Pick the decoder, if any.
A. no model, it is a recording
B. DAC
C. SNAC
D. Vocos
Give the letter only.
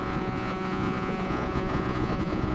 D